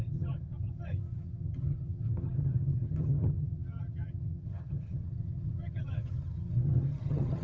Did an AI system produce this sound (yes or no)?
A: yes